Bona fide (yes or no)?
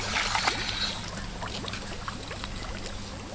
yes